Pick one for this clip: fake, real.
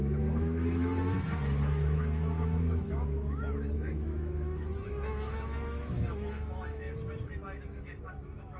fake